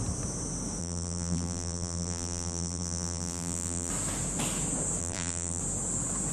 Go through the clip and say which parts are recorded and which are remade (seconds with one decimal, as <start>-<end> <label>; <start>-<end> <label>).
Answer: 0.0-0.8 recorded; 0.8-3.9 remade; 3.9-5.0 recorded; 5.0-5.6 remade; 5.6-6.3 recorded